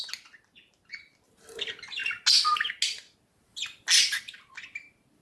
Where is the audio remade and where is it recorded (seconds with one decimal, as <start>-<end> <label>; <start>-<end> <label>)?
0.0-5.2 recorded